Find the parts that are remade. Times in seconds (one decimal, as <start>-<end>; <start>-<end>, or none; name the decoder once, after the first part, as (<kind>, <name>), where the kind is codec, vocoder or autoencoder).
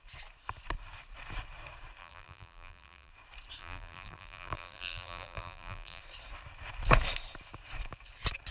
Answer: 2.0-3.1 (vocoder, BigVGAN v2); 3.6-6.0